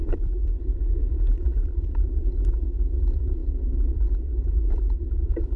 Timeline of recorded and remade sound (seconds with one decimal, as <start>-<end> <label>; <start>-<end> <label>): 0.0-5.6 remade